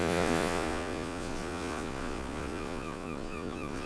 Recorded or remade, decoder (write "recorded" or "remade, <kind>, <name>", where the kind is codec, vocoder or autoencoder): remade, vocoder, Vocos